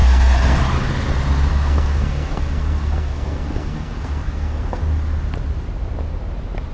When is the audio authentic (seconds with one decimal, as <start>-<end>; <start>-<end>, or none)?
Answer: 0.6-1.5; 4.8-6.7